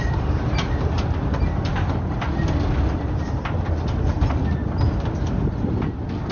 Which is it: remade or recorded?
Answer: recorded